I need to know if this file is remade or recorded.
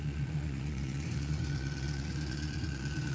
remade